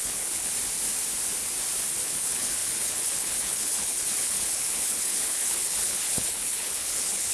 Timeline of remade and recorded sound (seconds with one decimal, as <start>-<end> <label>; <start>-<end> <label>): 0.0-0.5 remade; 0.5-2.0 recorded; 2.0-7.3 remade